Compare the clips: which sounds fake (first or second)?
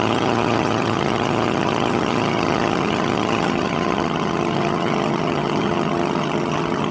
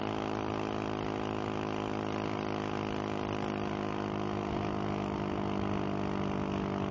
first